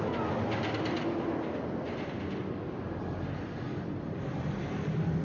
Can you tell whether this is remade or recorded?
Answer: recorded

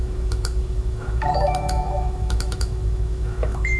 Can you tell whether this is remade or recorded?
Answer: remade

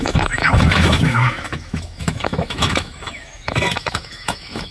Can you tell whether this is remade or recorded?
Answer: remade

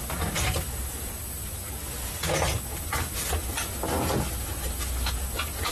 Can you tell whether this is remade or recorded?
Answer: recorded